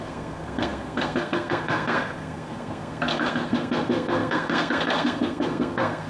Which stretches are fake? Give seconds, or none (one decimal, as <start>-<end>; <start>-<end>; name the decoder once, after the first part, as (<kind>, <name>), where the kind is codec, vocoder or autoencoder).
0.0-6.1 (codec, SNAC)